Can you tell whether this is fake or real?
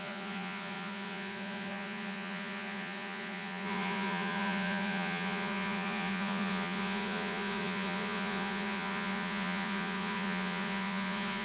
fake